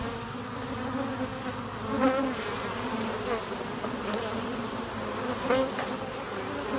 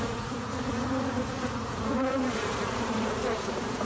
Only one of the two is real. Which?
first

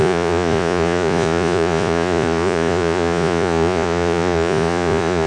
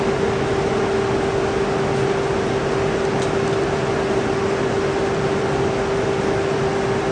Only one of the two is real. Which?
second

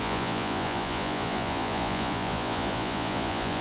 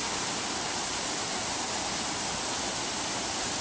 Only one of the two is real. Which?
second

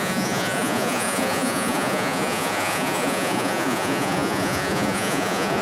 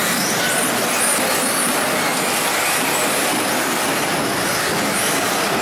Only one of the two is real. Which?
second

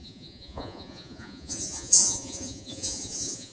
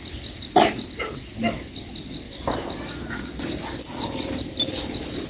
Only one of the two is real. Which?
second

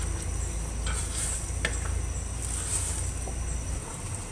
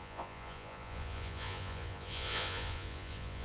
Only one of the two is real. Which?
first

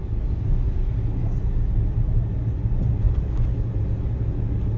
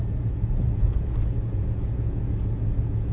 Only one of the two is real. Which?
first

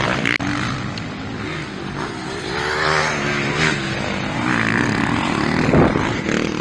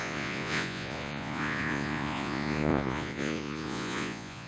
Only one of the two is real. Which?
first